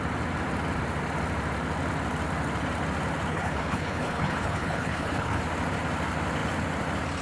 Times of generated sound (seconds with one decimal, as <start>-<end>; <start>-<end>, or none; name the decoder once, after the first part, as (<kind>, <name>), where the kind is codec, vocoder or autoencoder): 3.3-5.4 (codec, HILCodec)